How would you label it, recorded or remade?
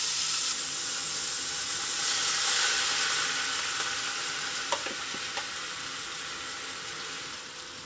recorded